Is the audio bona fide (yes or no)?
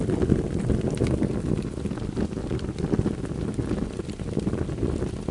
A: yes